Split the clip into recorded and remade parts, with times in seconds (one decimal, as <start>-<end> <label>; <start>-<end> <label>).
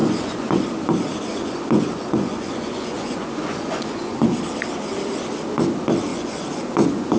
0.0-0.6 remade; 0.6-1.3 recorded; 1.3-4.2 remade; 4.2-6.1 recorded; 6.1-7.2 remade